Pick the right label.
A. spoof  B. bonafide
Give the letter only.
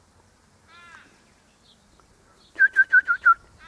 B